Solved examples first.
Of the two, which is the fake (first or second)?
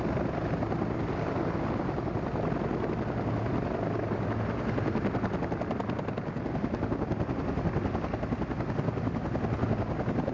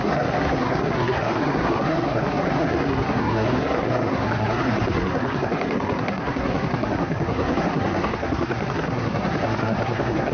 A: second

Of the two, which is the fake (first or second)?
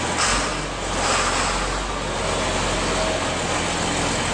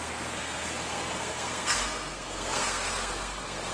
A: second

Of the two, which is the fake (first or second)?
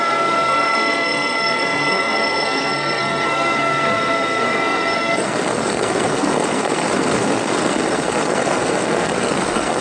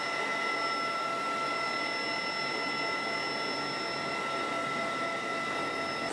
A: first